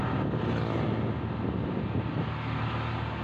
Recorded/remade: recorded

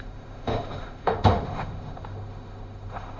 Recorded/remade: remade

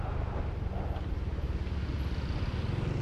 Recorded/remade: recorded